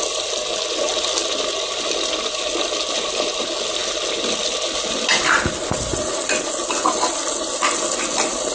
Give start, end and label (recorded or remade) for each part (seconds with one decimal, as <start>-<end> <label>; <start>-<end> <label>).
0.0-8.5 recorded